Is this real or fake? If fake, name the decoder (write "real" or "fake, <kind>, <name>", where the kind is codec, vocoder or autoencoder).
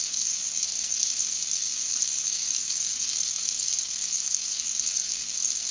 fake, codec, SNAC